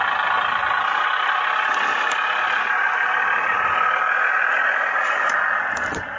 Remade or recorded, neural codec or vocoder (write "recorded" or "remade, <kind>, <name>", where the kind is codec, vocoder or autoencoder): recorded